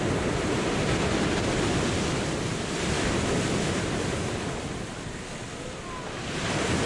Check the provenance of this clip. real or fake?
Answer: real